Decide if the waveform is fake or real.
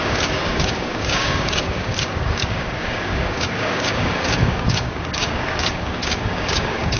fake